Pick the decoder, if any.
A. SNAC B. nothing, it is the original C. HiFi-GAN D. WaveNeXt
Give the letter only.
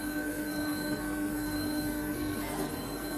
A